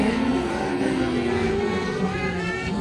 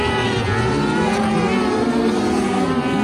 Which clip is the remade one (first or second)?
first